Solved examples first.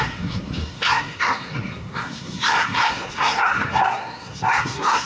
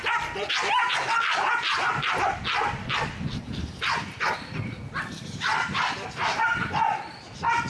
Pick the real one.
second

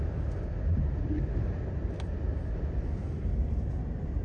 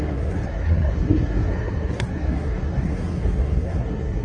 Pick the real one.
first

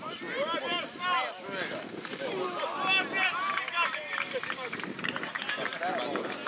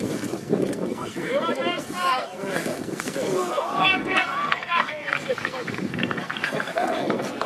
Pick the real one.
first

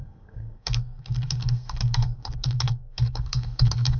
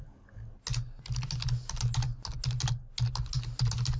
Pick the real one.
second